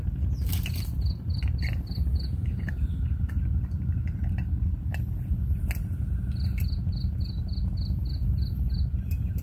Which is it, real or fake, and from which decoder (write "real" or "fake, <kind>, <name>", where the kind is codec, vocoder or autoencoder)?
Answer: real